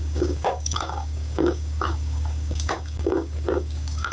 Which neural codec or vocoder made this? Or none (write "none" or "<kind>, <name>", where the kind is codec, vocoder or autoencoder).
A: codec, DAC